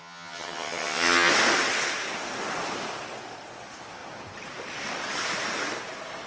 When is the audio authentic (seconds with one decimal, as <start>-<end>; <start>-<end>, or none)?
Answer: 1.3-6.3